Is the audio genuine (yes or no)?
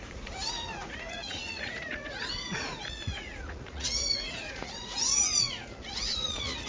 no